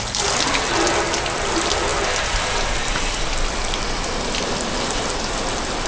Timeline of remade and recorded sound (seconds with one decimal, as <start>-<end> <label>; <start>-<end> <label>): 0.0-5.9 recorded